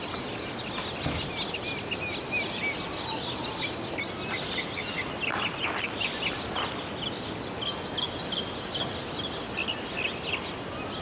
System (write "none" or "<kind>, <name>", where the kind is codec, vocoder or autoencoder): none